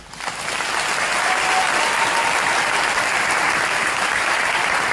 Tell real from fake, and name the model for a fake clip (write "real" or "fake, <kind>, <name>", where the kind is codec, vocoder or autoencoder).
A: real